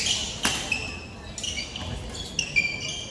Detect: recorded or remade recorded